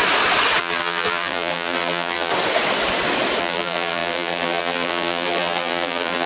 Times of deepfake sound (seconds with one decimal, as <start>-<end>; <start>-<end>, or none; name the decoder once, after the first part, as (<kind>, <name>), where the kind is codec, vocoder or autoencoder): 0.6-2.3 (vocoder, BigVGAN v2); 3.4-6.3